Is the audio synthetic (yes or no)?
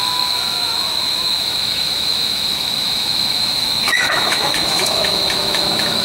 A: yes